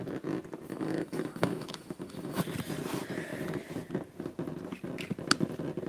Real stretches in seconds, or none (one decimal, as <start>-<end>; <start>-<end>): 0.0-0.7; 2.4-5.9